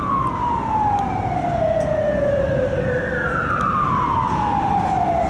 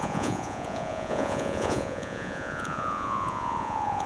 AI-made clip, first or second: second